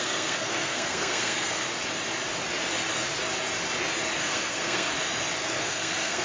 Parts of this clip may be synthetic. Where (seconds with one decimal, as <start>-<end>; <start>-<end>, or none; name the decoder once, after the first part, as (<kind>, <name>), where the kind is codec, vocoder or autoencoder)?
0.0-1.6 (codec, SNAC); 4.2-4.9; 5.6-6.2